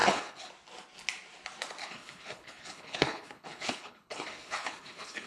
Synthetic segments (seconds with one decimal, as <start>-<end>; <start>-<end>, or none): 0.0-0.5; 1.8-5.3